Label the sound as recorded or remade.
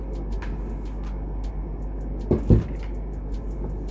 recorded